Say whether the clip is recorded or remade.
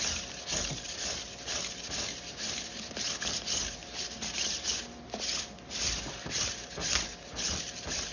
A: recorded